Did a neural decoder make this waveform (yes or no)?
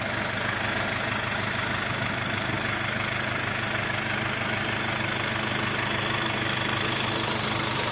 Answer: no